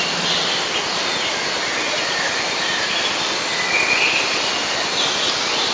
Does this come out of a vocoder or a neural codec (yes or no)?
no